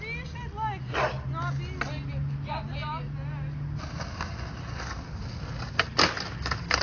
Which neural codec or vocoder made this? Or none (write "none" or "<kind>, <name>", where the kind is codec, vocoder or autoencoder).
none